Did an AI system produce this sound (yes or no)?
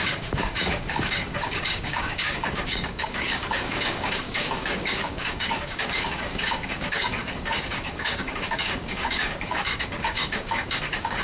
yes